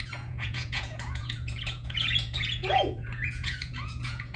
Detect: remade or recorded remade